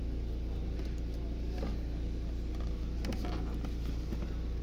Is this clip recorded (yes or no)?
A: yes